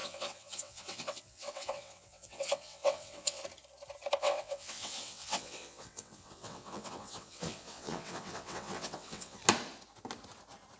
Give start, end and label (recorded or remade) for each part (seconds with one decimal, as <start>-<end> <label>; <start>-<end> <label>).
0.0-3.4 remade; 3.4-4.2 recorded; 4.2-9.4 remade; 9.4-10.8 recorded